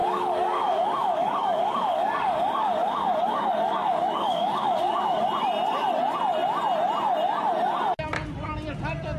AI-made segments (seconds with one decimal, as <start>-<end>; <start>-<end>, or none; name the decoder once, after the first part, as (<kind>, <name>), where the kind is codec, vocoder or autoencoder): 0.0-5.3 (codec, DAC)